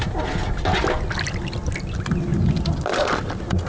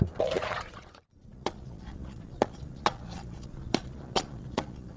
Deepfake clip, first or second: second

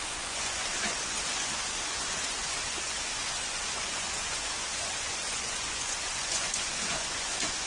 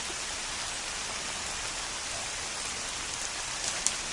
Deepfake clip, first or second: first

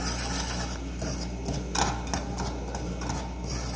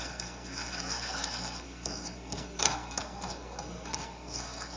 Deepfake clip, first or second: second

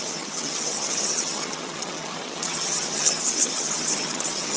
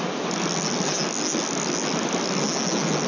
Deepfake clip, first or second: first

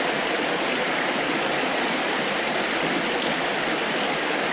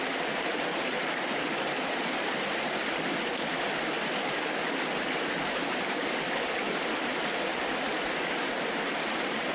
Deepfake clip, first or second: second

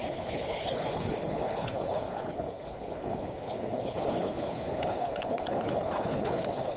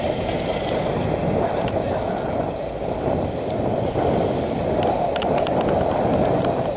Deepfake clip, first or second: first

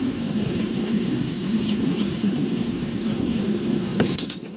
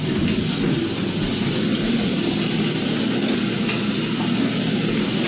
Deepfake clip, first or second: first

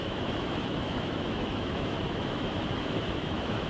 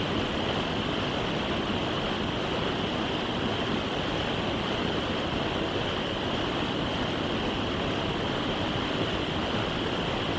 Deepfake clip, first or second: first